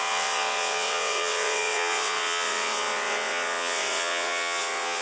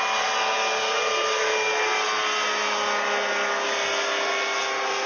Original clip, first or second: second